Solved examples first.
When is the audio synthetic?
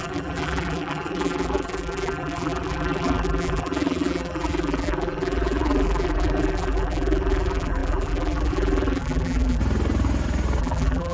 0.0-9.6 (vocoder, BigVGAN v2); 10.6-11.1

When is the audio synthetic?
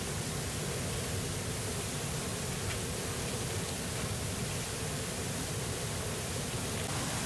2.3-6.5 (vocoder, BigVGAN v2)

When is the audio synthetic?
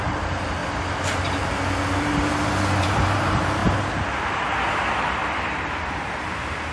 0.0-0.6 (vocoder, BigVGAN v2); 2.0-3.6; 4.7-5.2; 5.8-6.7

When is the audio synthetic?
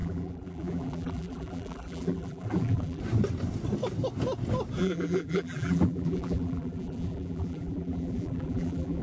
0.0-3.0 (vocoder, BigVGAN v2); 4.8-9.0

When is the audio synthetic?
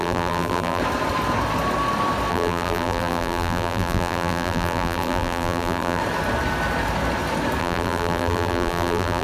0.0-0.8 (vocoder, BigVGAN v2); 2.3-6.0; 7.6-9.2